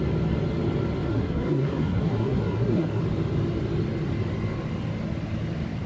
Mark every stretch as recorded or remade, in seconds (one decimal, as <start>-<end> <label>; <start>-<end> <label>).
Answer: 0.0-1.1 recorded; 1.1-3.0 remade; 3.0-5.9 recorded